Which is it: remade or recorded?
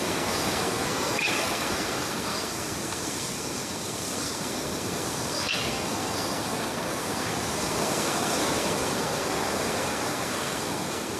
remade